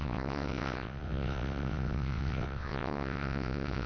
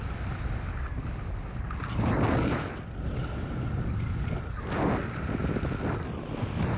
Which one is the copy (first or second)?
first